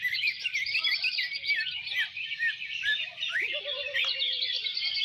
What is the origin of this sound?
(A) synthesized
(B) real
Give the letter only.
A